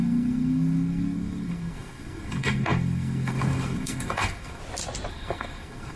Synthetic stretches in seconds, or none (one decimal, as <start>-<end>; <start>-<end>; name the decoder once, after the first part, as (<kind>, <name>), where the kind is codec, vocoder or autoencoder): 0.0-4.6 (codec, SNAC); 5.1-6.0

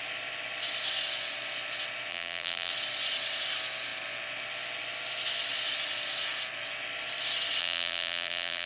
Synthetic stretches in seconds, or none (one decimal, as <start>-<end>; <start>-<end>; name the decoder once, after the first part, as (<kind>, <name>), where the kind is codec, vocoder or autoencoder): 2.1-2.7 (vocoder, BigVGAN v2); 7.6-8.7

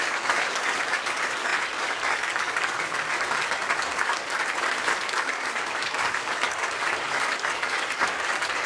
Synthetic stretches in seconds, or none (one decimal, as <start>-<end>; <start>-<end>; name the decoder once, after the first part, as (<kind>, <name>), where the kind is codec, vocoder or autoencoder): 0.0-8.7 (codec, DAC)

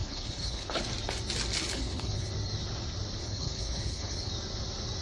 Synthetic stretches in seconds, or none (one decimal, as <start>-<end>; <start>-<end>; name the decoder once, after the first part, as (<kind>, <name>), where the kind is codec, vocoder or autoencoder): 0.0-0.8 (codec, HILCodec); 1.7-2.3; 3.2-4.3